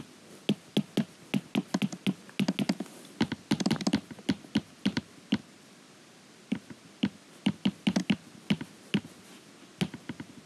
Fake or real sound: real